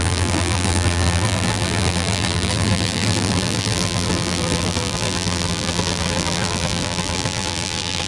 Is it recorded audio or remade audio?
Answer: remade